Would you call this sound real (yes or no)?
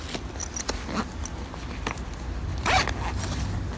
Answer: yes